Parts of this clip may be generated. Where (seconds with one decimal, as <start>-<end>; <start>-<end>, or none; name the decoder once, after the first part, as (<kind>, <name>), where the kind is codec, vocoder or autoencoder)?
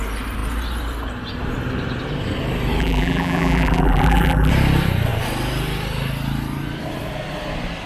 2.8-4.5 (vocoder, BigVGAN v2)